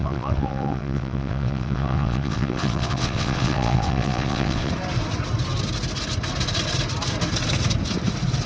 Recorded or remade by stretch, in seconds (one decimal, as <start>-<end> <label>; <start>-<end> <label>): 0.0-4.7 remade; 4.7-8.5 recorded